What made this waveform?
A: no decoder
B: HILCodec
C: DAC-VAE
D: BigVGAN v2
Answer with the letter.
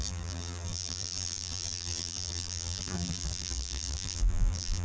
D